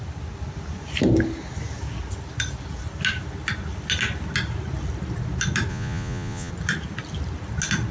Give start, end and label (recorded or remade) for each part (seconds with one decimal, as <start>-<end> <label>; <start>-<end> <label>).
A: 0.0-5.7 recorded; 5.7-6.5 remade; 6.5-7.9 recorded